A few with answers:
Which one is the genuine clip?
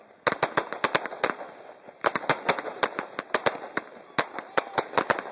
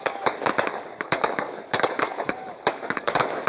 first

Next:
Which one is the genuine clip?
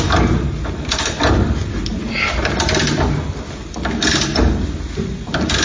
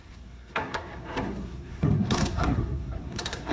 first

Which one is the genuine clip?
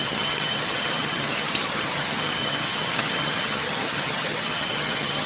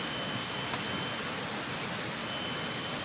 second